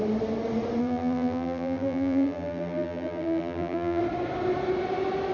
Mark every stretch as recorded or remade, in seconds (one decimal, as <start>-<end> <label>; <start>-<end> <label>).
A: 0.0-0.8 recorded; 0.8-4.0 remade; 4.0-5.3 recorded